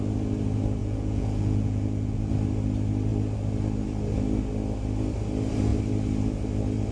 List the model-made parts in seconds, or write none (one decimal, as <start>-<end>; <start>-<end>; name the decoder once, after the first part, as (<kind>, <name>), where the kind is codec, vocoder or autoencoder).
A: 0.8-2.3 (vocoder, Vocos)